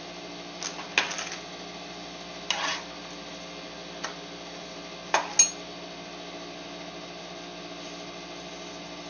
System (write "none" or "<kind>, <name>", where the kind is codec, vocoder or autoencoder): none